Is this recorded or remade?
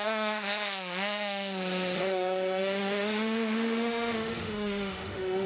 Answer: remade